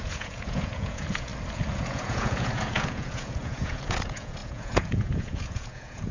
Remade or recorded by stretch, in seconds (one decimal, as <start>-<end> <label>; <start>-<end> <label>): 0.0-1.3 remade; 1.3-1.8 recorded; 1.8-6.1 remade